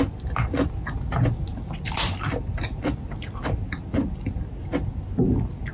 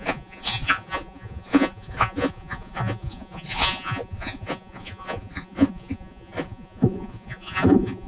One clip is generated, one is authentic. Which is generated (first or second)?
second